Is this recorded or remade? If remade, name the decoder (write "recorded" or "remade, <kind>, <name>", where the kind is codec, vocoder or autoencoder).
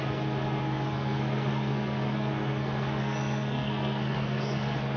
remade, codec, SNAC